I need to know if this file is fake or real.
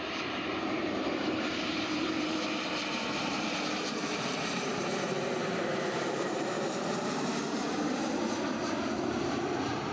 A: fake